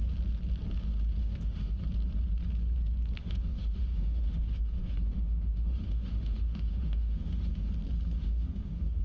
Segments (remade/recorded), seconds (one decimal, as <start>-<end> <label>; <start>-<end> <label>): 0.0-1.2 recorded; 1.2-1.8 remade; 1.8-3.2 recorded; 3.2-7.7 remade; 7.7-8.2 recorded; 8.2-9.0 remade